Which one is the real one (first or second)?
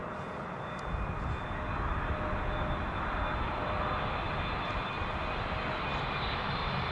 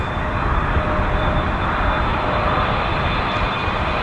first